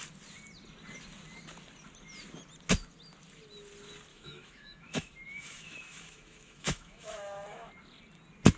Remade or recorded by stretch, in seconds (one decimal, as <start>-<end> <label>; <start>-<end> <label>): 0.0-4.1 recorded; 4.1-7.7 remade; 7.7-8.6 recorded